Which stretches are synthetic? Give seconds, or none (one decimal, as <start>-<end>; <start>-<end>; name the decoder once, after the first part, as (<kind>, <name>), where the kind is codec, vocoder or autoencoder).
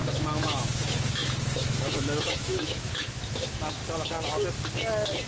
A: 0.0-3.8 (autoencoder, DAC-VAE)